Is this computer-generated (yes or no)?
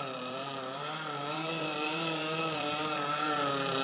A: yes